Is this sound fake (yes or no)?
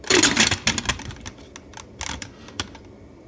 no